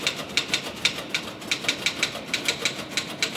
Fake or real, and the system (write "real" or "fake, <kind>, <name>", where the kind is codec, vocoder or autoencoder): real